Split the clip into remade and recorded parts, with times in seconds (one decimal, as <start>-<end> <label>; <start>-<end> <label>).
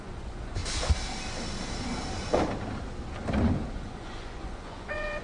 0.0-0.6 remade; 0.6-3.7 recorded; 3.7-5.2 remade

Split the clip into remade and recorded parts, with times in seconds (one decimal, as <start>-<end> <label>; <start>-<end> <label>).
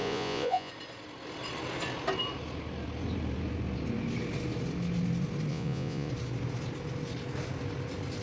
0.0-0.7 remade; 0.7-5.5 recorded; 5.5-6.1 remade; 6.1-8.2 recorded